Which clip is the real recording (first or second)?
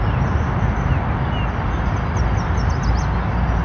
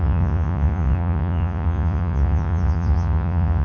first